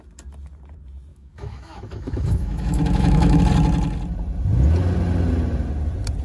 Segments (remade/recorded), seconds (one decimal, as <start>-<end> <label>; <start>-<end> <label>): 0.0-1.1 recorded; 1.1-3.4 remade; 3.4-6.2 recorded